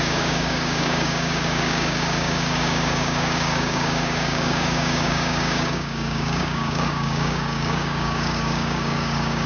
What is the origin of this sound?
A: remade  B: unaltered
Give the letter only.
A